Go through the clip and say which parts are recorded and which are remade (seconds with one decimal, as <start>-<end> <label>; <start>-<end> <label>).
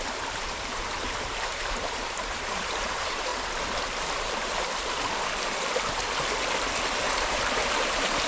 0.0-3.3 remade; 3.3-7.2 recorded; 7.2-8.3 remade